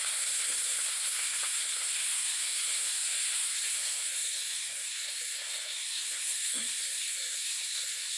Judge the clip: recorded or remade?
remade